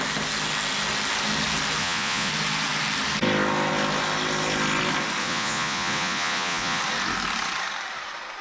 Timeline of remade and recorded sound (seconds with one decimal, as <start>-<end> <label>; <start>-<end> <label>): 0.0-1.8 recorded; 1.8-2.3 remade; 2.3-5.2 recorded; 5.2-6.8 remade; 6.8-8.4 recorded